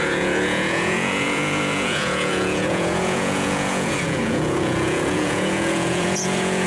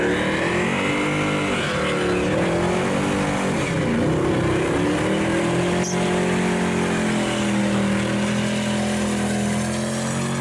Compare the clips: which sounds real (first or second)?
second